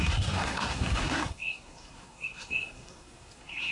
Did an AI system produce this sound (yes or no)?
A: yes